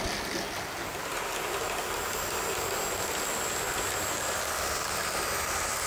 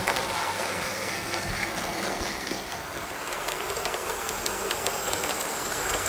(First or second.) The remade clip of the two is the second